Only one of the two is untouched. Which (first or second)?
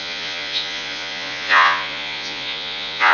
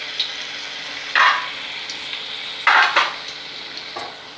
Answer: second